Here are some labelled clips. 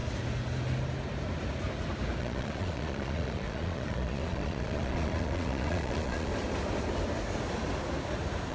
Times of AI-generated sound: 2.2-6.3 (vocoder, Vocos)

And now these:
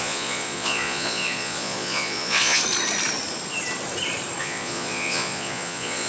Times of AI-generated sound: 0.0-2.6 (vocoder, Vocos); 4.4-6.1

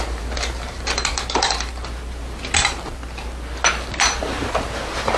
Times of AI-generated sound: 0.0-1.7 (vocoder, BigVGAN v2); 4.2-5.2

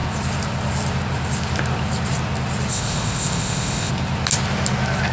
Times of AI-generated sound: 2.7-3.9 (codec, ZipCodec)

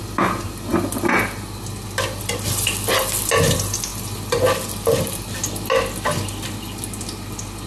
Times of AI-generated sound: none

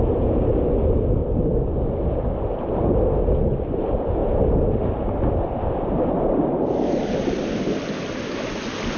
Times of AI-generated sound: none

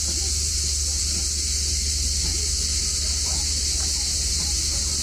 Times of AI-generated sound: none